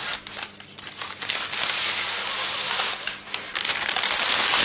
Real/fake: real